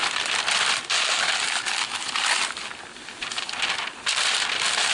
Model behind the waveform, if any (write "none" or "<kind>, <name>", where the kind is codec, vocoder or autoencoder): none